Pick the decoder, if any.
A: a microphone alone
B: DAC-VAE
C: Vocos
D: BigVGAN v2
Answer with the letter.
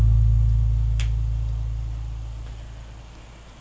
A